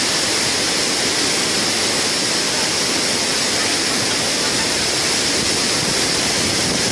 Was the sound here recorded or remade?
recorded